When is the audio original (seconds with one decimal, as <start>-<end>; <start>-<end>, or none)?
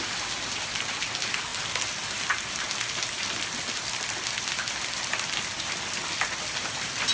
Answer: 0.0-7.1